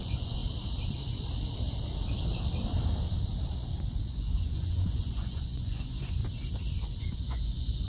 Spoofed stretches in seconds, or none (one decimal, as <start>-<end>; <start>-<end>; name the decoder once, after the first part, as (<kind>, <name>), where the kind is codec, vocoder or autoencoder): 0.0-0.4 (vocoder, Vocos); 4.1-6.2; 7.0-7.9